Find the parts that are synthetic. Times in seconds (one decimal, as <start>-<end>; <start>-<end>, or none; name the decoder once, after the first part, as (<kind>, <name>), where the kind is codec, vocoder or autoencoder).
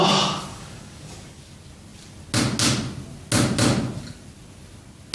0.5-1.4 (codec, DAC)